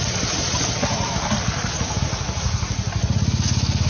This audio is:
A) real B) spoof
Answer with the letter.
A